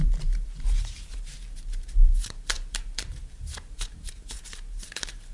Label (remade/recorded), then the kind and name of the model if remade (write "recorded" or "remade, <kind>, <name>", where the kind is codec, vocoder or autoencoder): remade, vocoder, BigVGAN v2